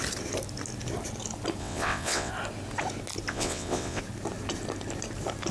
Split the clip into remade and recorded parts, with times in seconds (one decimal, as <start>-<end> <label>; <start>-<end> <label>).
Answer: 0.0-1.6 recorded; 1.6-2.3 remade; 2.3-3.3 recorded; 3.3-4.0 remade; 4.0-5.5 recorded